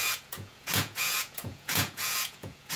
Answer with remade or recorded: remade